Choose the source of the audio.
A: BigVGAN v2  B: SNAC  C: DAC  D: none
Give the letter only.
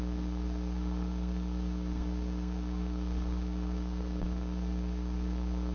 B